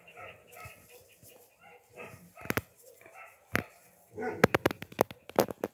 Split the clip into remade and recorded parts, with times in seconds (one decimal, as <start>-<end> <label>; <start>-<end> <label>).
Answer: 0.0-5.7 recorded